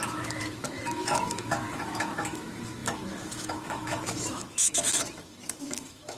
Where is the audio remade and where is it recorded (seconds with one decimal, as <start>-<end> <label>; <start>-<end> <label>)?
0.0-6.2 remade